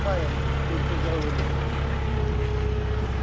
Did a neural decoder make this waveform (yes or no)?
no